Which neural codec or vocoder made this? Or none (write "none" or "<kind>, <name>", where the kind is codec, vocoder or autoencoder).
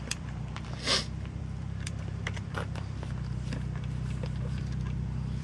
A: vocoder, BigVGAN v2